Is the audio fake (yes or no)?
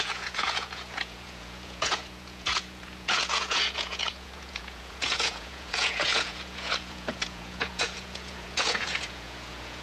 yes